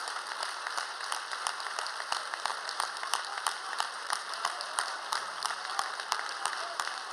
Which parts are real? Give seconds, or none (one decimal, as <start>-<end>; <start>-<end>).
1.2-2.5